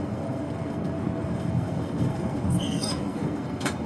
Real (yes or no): no